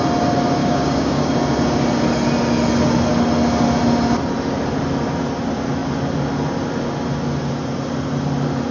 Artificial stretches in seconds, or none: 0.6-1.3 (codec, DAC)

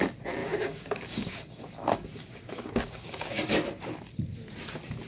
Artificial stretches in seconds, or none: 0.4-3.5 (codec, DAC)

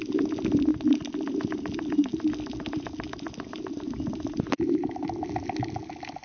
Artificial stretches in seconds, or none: none